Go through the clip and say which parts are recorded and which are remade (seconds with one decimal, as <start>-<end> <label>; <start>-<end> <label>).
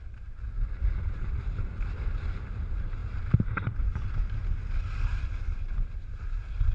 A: 0.0-6.7 recorded